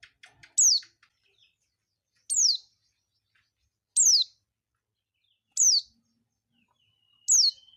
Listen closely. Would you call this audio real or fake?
real